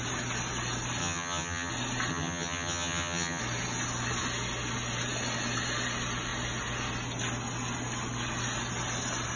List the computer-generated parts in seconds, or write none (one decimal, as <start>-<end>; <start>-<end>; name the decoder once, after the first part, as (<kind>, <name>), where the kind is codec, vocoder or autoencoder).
1.0-1.7 (vocoder, HiFi-GAN); 2.1-3.4